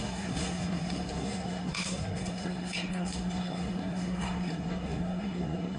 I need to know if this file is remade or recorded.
remade